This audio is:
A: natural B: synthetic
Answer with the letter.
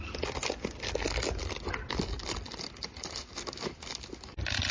A